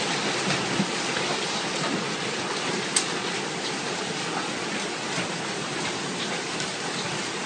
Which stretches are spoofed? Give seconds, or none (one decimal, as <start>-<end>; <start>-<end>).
none